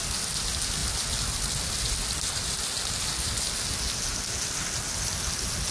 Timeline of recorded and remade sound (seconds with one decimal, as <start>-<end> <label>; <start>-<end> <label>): 0.0-5.7 recorded